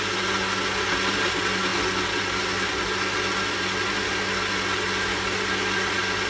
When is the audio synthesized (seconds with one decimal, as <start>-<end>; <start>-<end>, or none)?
none